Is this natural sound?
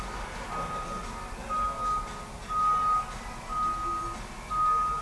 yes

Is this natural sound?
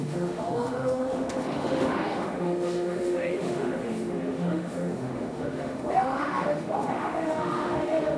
no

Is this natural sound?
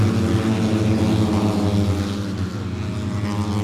yes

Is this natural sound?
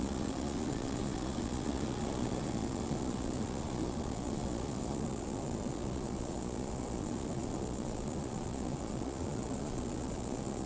no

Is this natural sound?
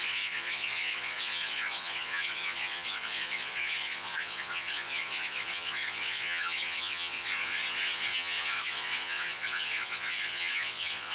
no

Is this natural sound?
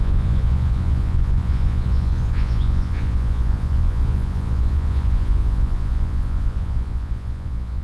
no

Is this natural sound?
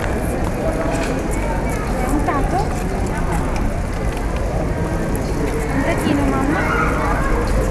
yes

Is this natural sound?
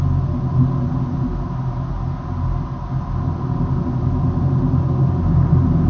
yes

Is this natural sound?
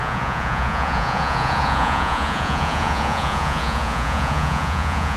no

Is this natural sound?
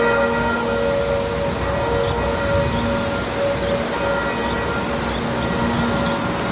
yes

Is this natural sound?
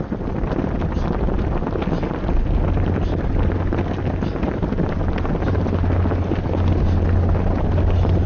yes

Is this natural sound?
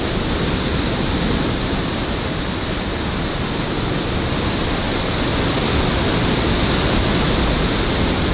yes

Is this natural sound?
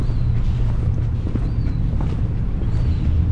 yes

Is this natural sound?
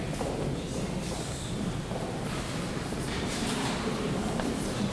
no